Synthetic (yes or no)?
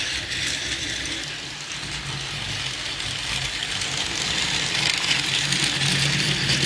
no